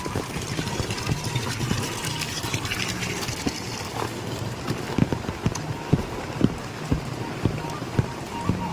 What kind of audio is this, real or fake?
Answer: fake